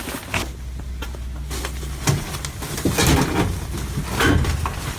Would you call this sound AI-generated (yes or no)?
no